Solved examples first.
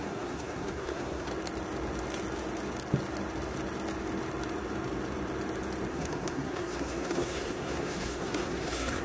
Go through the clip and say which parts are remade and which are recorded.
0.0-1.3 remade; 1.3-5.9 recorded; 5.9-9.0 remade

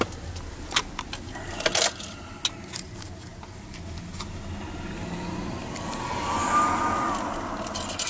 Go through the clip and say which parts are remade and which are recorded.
0.0-8.1 recorded

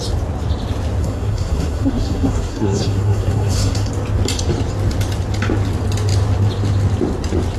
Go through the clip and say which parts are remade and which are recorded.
0.0-1.0 recorded; 1.0-3.9 remade; 3.9-7.6 recorded

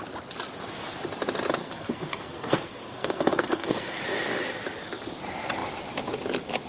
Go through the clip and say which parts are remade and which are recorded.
0.0-1.6 recorded; 1.6-4.0 remade; 4.0-6.7 recorded

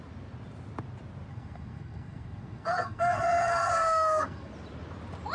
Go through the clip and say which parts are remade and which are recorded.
0.0-1.3 recorded; 1.3-4.5 remade; 4.5-5.3 recorded